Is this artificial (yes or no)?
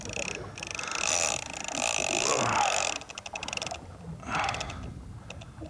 no